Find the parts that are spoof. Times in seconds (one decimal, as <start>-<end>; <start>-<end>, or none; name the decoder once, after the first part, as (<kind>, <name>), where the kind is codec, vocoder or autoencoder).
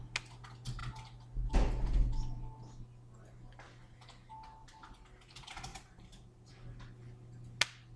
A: 5.7-6.5 (vocoder, BigVGAN v2)